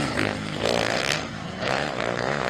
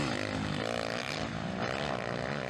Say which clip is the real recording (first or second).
second